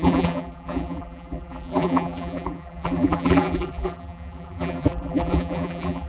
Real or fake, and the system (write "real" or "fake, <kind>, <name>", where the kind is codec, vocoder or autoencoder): fake, vocoder, BigVGAN v2